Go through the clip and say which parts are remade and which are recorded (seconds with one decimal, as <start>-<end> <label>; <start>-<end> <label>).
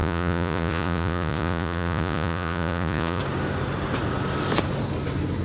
0.0-3.2 remade; 3.2-5.4 recorded